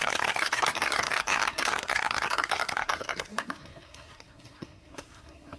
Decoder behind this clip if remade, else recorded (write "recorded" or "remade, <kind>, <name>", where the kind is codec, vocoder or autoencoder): remade, codec, SNAC